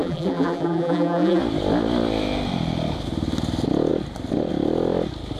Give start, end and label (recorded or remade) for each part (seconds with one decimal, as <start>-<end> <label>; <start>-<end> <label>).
0.0-1.4 remade; 1.4-5.4 recorded